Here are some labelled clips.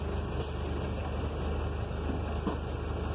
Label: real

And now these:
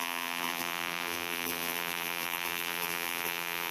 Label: fake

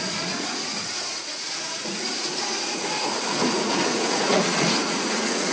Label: fake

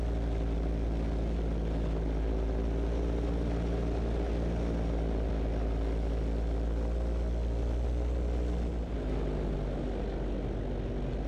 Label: real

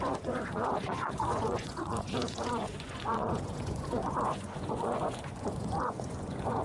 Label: fake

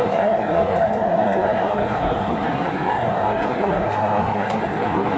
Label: fake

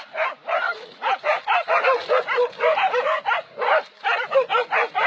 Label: real